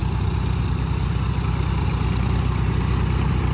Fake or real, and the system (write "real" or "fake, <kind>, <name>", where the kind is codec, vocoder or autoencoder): real